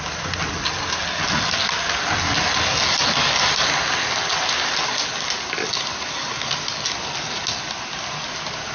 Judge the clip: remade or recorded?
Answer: recorded